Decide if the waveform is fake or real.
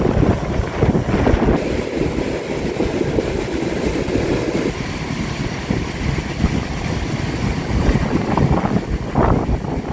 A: real